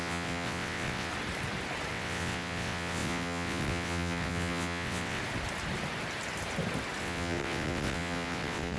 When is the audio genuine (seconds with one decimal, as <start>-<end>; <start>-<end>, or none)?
1.1-1.9; 5.2-7.0

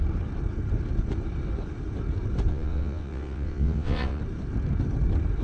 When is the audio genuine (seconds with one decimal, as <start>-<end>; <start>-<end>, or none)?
0.0-2.5; 4.2-5.4

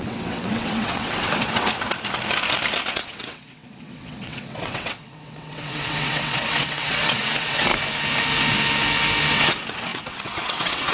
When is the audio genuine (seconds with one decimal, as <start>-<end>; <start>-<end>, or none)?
1.7-2.9; 7.7-9.3

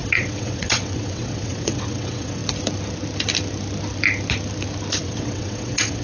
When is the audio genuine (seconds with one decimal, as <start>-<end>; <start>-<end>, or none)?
2.4-5.0

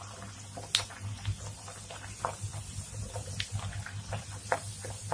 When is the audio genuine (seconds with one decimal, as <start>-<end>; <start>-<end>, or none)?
0.0-5.1

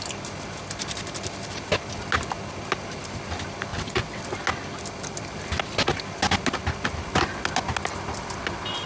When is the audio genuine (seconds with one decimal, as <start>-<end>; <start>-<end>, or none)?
0.0-3.7; 4.2-8.9

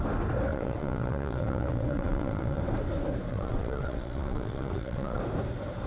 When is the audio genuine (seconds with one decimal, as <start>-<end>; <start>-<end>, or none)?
0.0-0.5; 2.6-3.3; 5.2-5.9